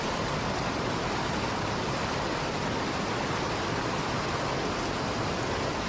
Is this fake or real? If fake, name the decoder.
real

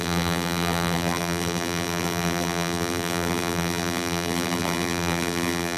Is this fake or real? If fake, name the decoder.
fake, vocoder, BigVGAN v2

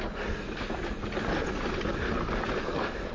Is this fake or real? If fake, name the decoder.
real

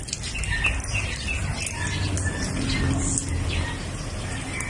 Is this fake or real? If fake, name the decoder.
real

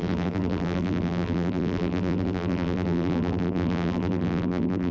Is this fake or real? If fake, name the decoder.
fake, vocoder, BigVGAN v2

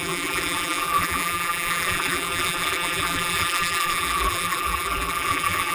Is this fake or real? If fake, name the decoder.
fake, vocoder, BigVGAN v2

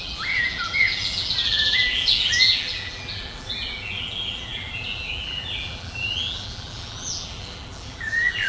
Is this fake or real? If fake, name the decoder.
fake, vocoder, BigVGAN v2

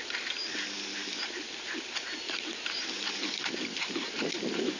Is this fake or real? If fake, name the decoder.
real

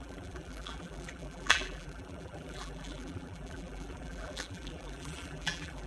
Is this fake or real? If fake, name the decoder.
fake, vocoder, BigVGAN v2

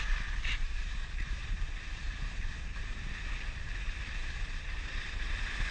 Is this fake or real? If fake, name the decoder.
fake, vocoder, BigVGAN v2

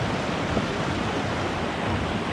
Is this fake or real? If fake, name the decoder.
real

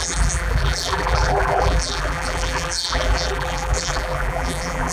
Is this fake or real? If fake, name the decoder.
fake, vocoder, BigVGAN v2